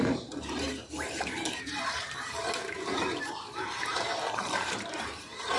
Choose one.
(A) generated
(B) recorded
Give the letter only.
A